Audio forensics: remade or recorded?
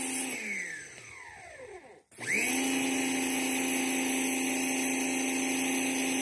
recorded